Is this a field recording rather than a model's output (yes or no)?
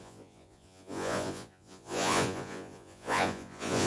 no